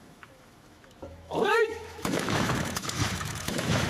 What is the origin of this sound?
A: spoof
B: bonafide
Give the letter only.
A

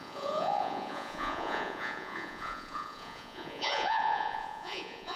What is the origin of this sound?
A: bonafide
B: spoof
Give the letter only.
B